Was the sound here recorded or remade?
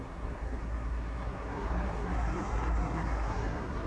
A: remade